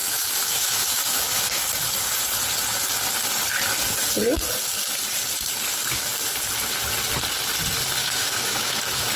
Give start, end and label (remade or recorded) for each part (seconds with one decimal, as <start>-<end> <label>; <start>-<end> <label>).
0.0-1.6 remade; 1.6-8.0 recorded; 8.0-9.2 remade